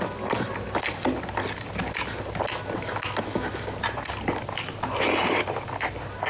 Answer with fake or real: real